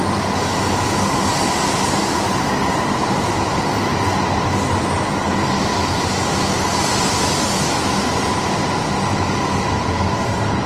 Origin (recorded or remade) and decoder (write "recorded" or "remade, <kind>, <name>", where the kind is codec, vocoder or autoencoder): recorded